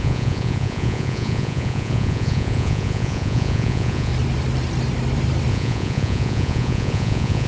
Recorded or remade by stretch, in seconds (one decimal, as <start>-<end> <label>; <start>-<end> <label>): 0.0-4.1 remade; 4.1-5.5 recorded; 5.5-7.5 remade